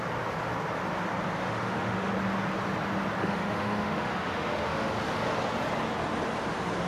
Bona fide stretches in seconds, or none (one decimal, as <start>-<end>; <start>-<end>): 0.0-1.4; 2.1-3.2; 4.9-6.9